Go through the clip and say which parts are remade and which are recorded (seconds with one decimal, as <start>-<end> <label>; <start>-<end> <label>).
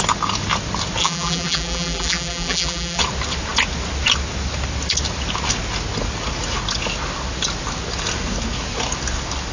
0.0-1.0 recorded; 1.0-3.0 remade; 3.0-9.5 recorded